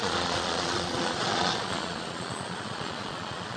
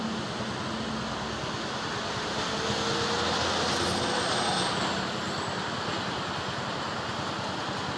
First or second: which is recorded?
second